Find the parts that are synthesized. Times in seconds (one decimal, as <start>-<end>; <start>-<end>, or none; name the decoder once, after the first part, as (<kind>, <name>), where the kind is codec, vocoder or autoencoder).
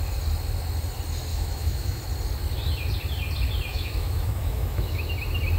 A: 1.3-2.0 (autoencoder, DAC-VAE); 3.7-5.1